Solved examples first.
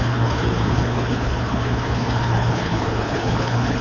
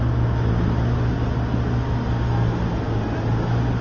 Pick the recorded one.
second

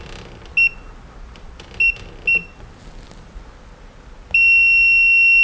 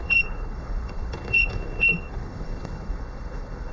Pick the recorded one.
first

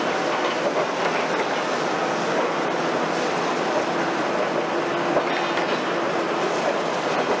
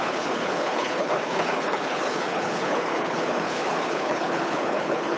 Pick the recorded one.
first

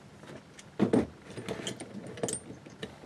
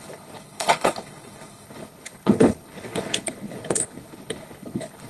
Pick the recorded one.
first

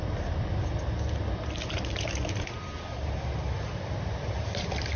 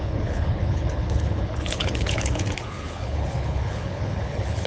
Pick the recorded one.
first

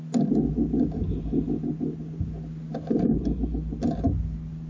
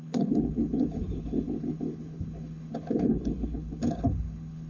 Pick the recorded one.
first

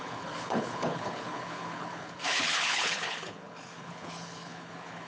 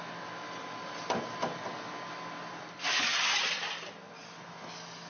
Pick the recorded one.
second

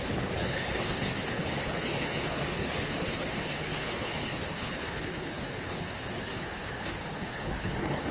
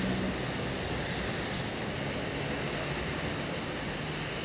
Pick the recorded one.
second